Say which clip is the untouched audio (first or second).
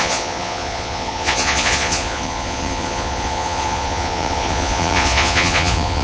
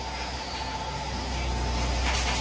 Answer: second